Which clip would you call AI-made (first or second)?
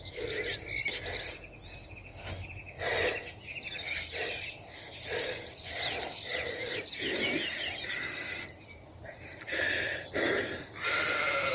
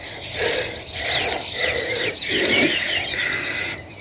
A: second